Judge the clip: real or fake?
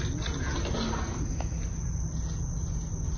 real